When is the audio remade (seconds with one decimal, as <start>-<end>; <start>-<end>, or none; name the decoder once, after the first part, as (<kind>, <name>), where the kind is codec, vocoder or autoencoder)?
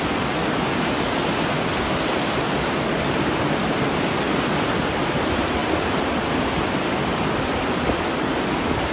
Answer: none